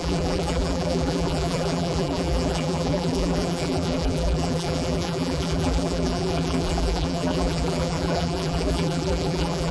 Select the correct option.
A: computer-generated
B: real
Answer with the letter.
A